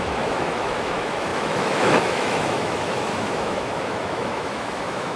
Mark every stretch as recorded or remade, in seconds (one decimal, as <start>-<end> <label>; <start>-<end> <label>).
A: 0.0-5.2 remade

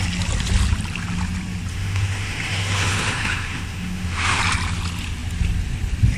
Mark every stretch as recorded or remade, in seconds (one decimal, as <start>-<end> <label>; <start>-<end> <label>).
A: 0.0-1.7 recorded; 1.7-4.4 remade; 4.4-6.2 recorded

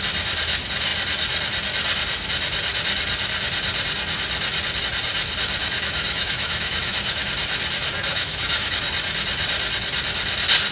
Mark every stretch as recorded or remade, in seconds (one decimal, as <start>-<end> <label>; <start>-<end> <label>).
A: 0.0-5.6 recorded; 5.6-7.2 remade; 7.2-8.1 recorded; 8.1-8.8 remade; 8.8-10.7 recorded

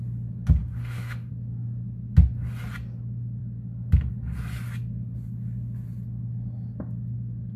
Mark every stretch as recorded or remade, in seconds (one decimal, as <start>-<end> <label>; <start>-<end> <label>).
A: 0.0-0.6 recorded; 0.6-1.3 remade; 1.3-7.6 recorded